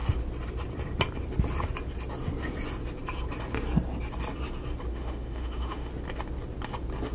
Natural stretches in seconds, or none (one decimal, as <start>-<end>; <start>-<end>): 0.0-4.9; 5.9-7.1